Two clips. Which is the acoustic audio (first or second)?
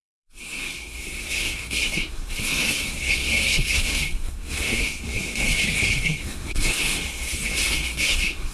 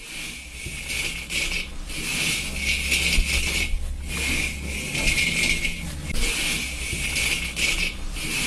second